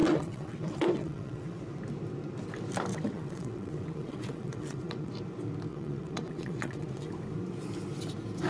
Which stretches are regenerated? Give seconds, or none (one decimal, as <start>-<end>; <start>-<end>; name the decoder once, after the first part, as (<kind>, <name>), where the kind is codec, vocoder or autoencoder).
0.0-1.6 (vocoder, WaveNeXt); 2.9-5.1; 5.7-7.1

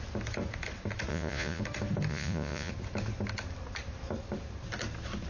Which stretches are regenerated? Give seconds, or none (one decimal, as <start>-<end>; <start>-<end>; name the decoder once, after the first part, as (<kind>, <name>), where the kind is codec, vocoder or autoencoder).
1.1-1.6 (vocoder, Vocos); 2.1-2.7